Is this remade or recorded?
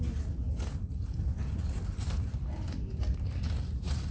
recorded